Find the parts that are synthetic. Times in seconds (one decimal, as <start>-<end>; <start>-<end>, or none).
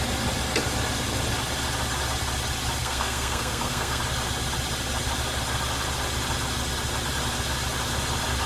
2.8-4.0